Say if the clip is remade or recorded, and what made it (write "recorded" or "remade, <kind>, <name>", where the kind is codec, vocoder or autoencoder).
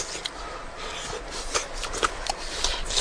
recorded